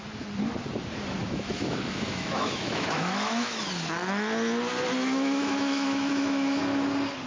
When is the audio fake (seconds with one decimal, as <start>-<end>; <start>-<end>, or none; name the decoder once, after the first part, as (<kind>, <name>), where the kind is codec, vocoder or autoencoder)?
1.2-3.6 (autoencoder, DAC-VAE); 5.0-6.6